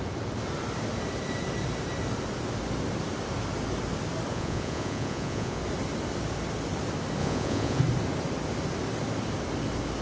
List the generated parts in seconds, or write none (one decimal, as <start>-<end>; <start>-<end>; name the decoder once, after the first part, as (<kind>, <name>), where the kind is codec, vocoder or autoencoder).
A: 4.3-5.6 (vocoder, Vocos); 7.2-7.8